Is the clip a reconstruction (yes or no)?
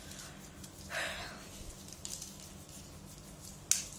no